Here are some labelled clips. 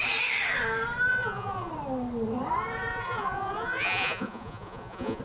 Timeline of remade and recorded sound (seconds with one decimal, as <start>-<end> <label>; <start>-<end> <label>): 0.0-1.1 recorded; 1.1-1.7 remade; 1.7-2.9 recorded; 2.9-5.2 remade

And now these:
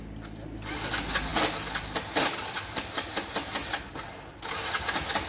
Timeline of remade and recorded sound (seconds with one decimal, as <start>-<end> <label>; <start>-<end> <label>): 0.0-5.3 recorded

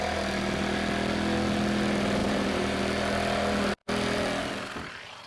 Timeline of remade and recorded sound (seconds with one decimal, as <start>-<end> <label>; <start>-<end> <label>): 0.0-2.2 recorded; 2.2-2.8 remade; 2.8-5.3 recorded